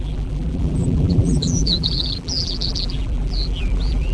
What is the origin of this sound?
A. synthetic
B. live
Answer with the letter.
A